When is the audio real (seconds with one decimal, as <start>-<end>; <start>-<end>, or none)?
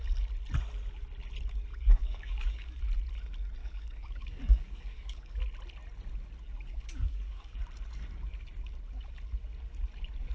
0.0-1.7; 2.8-3.6; 5.4-6.7; 7.6-10.3